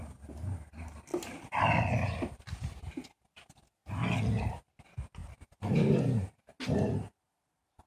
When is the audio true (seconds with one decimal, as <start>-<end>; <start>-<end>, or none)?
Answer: 0.0-7.9

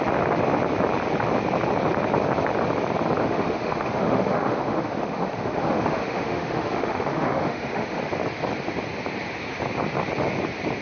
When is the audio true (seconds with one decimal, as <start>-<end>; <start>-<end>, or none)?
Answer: 0.0-3.2; 8.0-10.8

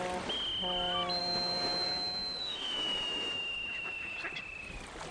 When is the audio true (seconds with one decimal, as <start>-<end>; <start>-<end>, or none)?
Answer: 0.0-1.2; 4.2-5.1

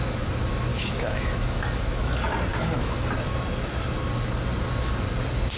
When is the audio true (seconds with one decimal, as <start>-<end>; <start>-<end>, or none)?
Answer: 0.0-0.7; 2.1-2.5; 3.1-5.6

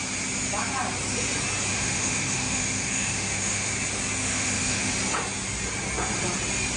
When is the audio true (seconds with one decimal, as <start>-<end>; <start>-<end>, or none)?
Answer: 0.0-1.7; 3.7-4.2; 4.9-6.8

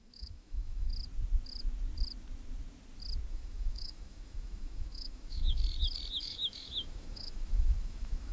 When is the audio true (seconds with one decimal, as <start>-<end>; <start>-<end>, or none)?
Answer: 0.9-3.3; 5.6-6.2

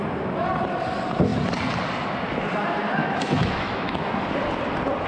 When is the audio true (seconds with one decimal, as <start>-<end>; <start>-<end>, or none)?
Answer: 0.0-3.0; 4.1-5.1